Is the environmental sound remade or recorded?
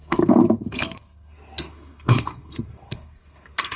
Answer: remade